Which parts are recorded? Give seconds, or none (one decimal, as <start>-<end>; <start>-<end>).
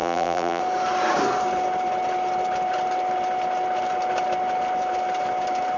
0.6-5.8